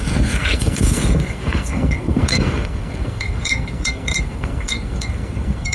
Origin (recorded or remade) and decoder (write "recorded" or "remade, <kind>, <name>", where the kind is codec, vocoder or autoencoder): remade, codec, SNAC